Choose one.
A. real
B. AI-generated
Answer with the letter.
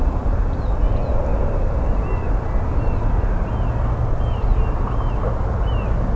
A